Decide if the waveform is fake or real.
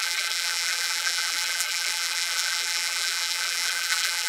fake